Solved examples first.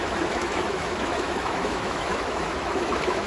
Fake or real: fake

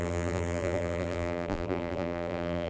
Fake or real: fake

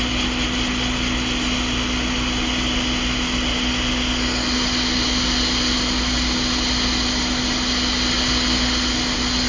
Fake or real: real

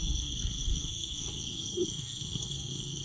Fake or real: fake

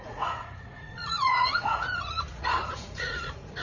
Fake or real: fake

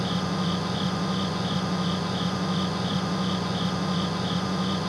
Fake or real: fake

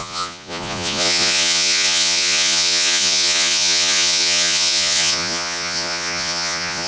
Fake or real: fake